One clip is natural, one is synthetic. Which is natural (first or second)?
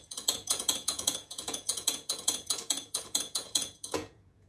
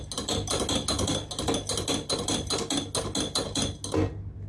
second